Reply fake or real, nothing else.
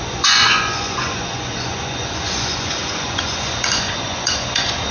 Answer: fake